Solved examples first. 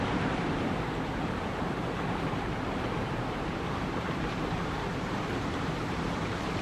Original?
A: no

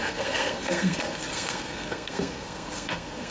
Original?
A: no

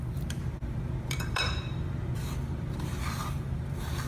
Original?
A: no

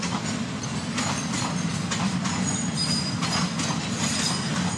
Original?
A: yes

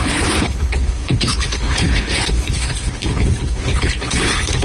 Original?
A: no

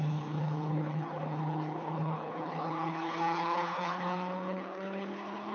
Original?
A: no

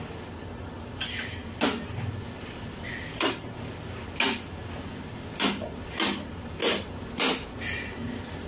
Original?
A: yes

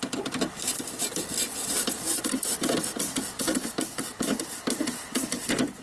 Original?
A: yes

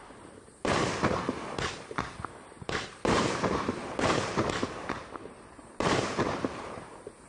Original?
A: no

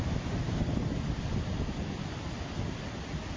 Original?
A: yes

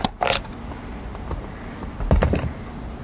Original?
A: yes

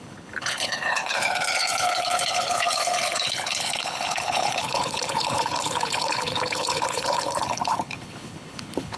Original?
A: no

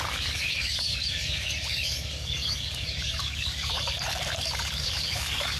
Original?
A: no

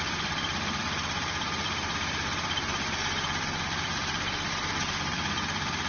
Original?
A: no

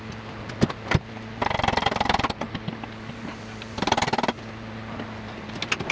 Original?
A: yes